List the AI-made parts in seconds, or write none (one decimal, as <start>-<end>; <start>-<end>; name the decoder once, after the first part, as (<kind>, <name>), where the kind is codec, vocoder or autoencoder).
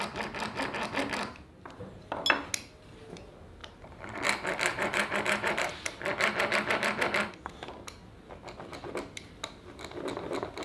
3.6-4.2 (vocoder, BigVGAN v2); 4.7-6.0